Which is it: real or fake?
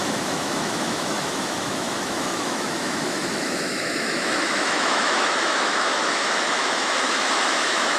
fake